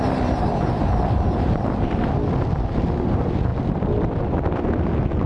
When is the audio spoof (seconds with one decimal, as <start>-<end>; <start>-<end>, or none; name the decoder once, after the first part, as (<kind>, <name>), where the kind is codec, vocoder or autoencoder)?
3.5-4.2 (vocoder, BigVGAN v2)